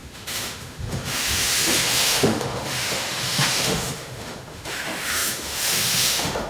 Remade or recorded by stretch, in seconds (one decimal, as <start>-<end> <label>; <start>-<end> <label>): 0.0-6.5 remade